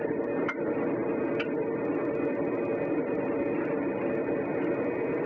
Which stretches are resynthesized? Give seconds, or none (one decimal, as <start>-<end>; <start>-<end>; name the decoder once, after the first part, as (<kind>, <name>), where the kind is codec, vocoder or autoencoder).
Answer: none